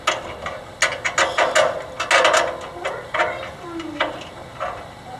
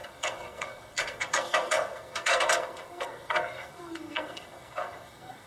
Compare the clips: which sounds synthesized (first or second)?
second